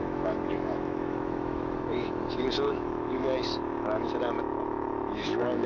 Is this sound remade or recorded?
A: remade